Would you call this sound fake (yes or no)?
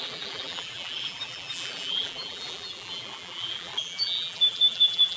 yes